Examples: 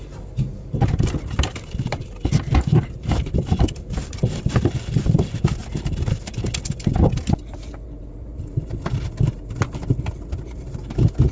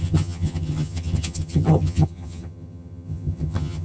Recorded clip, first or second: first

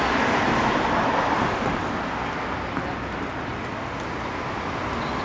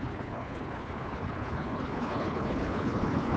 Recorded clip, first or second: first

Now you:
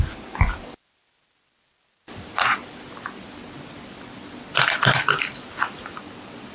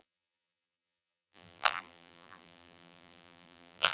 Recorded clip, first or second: first